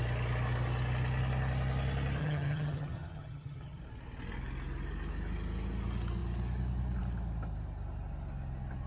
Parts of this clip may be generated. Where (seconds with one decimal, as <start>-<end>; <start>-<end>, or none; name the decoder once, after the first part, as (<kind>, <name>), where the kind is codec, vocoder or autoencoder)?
2.2-3.8 (vocoder, HiFi-GAN)